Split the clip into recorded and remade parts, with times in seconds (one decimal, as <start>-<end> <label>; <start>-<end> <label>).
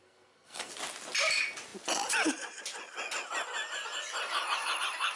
0.0-0.7 remade; 0.7-5.2 recorded